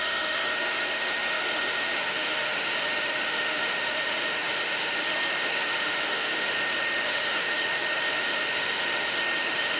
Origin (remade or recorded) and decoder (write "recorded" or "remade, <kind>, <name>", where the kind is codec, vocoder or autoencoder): remade, autoencoder, DAC-VAE